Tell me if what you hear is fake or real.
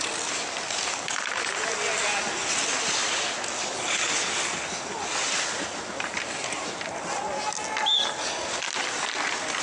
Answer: real